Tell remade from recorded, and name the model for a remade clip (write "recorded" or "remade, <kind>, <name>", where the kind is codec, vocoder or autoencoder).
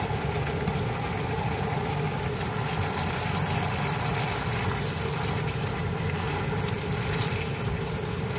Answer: recorded